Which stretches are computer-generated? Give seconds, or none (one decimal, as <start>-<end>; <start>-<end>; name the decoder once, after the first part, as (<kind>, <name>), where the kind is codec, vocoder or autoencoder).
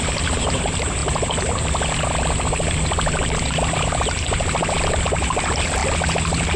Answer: none